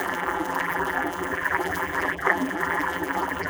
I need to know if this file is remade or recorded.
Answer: remade